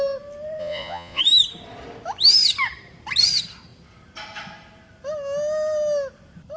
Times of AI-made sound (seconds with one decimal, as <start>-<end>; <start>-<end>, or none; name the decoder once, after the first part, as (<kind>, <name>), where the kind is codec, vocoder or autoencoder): 0.6-1.2 (vocoder, Vocos)